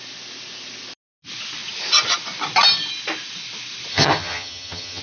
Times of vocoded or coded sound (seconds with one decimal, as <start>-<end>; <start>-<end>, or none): 3.9-5.0